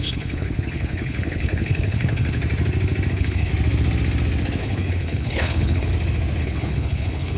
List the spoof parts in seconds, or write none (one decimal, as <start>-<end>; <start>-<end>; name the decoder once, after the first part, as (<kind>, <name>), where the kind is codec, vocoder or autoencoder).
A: 0.0-2.4 (codec, HILCodec); 3.1-3.5; 4.6-5.9; 6.4-7.4

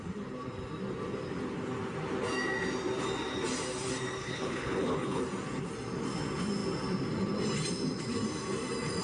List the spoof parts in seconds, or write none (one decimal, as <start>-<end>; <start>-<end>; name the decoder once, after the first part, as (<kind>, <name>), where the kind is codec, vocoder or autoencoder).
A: 4.2-5.2 (codec, HILCodec)

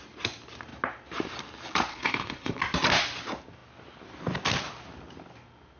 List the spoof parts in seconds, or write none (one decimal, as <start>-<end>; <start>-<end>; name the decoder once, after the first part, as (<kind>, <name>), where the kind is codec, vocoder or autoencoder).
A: 1.9-2.6 (codec, HILCodec)

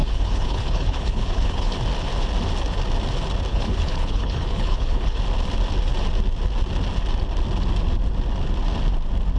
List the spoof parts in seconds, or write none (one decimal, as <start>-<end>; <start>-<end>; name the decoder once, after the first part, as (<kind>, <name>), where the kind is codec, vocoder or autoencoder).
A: 0.0-1.7 (codec, HILCodec); 3.5-5.2

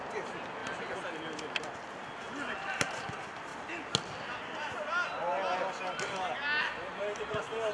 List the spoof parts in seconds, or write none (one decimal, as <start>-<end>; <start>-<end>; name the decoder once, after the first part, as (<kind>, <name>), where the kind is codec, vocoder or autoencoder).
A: none

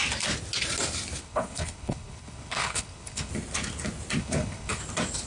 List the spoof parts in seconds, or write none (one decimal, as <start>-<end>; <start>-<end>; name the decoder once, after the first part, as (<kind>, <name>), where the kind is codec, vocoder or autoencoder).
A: 1.2-3.3 (codec, HILCodec); 4.2-4.8